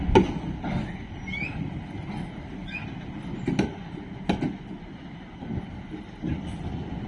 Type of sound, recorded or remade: recorded